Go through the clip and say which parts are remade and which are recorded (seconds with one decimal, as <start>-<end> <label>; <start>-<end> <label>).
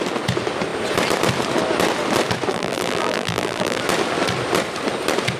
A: 0.0-2.5 recorded; 2.5-3.8 remade; 3.8-5.4 recorded